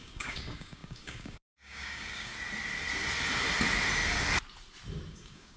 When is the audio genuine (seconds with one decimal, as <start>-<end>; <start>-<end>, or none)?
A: 2.3-5.1